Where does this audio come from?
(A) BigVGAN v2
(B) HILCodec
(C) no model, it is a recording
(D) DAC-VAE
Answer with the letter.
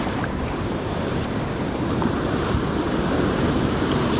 A